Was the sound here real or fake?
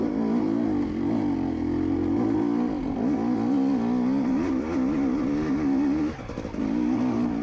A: real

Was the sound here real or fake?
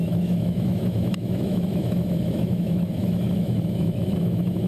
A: fake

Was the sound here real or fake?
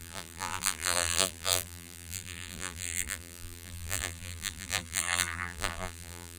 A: fake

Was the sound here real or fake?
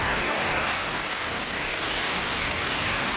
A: fake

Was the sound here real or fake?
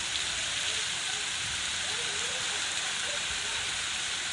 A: real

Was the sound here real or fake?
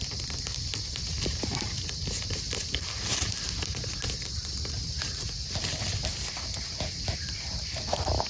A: real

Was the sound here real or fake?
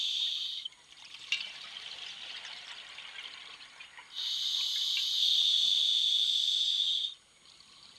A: real